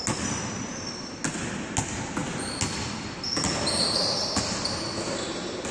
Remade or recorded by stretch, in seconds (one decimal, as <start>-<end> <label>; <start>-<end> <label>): 0.0-5.7 recorded